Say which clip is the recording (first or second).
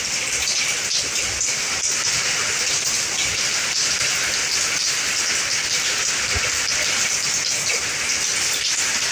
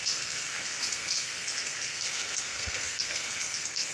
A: first